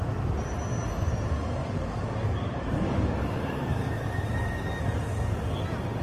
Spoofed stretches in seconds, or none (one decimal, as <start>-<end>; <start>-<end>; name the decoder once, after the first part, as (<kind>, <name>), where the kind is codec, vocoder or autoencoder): 1.6-4.7 (codec, DAC)